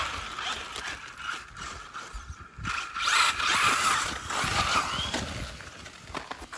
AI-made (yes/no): no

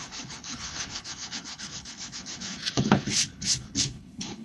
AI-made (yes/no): yes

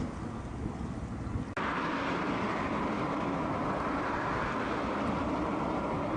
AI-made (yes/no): no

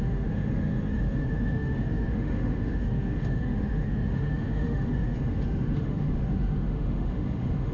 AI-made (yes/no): yes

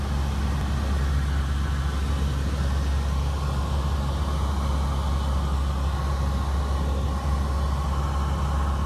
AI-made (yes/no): no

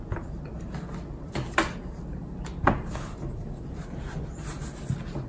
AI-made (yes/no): no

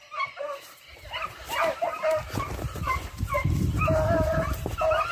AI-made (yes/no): no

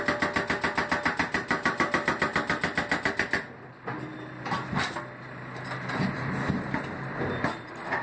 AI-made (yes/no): no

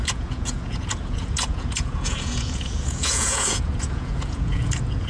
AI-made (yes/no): yes